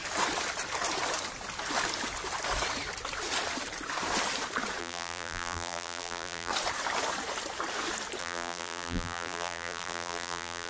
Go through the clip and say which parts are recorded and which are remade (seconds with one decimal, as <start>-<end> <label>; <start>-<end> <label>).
0.0-4.8 recorded; 4.8-6.5 remade; 6.5-8.2 recorded; 8.2-10.7 remade